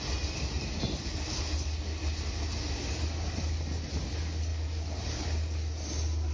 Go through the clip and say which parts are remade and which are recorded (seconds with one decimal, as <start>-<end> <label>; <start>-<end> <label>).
0.0-6.3 recorded